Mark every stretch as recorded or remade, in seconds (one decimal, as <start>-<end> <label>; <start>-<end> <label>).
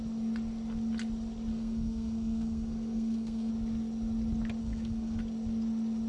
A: 0.0-1.5 recorded; 1.5-3.5 remade; 3.5-4.6 recorded; 4.6-5.2 remade; 5.2-6.1 recorded